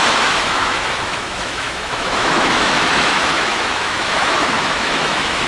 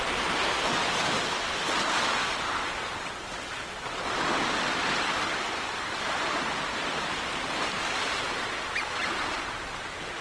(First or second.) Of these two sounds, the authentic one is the second